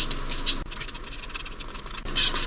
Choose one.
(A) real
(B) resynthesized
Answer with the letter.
A